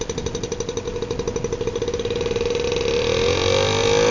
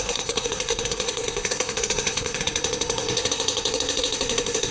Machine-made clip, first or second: second